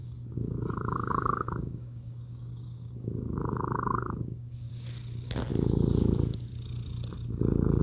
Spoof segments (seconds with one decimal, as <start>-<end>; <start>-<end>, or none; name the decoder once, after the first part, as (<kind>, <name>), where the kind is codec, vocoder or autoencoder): 0.0-4.7 (codec, DAC)